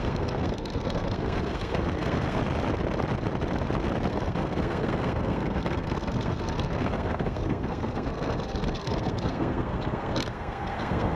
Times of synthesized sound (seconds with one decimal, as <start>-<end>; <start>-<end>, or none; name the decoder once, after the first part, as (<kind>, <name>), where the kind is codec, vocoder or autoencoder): 0.0-2.4 (codec, SNAC); 4.1-11.2